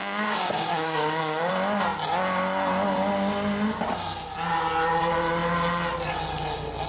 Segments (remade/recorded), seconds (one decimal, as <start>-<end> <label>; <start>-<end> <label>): 0.0-1.5 remade; 1.5-6.9 recorded